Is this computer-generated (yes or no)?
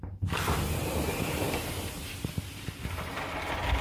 no